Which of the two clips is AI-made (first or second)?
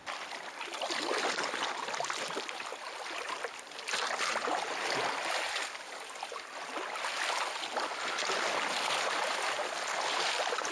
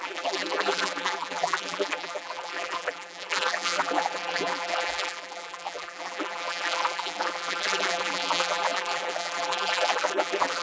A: second